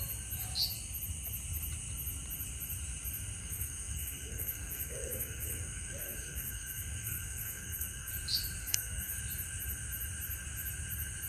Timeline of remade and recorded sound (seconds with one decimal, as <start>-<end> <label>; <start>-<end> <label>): 0.0-3.4 recorded; 3.4-8.1 remade; 8.1-8.6 recorded; 8.6-9.2 remade; 9.2-11.3 recorded